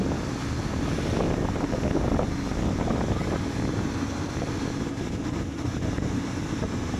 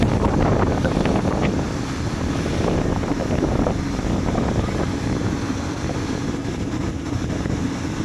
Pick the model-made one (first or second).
second